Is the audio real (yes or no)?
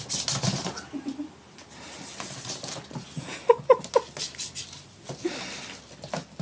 yes